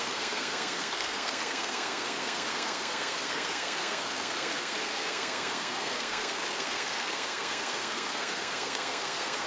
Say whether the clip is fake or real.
fake